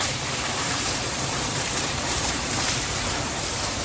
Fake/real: fake